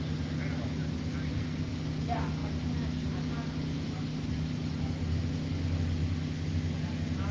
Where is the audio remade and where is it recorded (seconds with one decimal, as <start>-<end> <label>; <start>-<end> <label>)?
0.0-1.3 recorded; 1.3-1.8 remade; 1.8-7.3 recorded